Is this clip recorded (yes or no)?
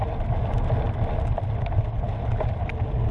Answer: yes